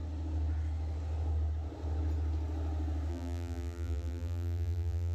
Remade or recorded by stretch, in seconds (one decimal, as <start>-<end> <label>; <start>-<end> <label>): 0.0-3.1 recorded; 3.1-5.1 remade